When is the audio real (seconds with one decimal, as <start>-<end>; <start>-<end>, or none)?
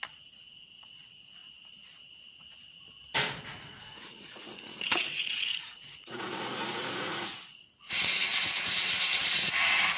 1.4-3.4